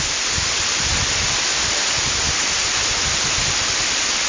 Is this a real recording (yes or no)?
yes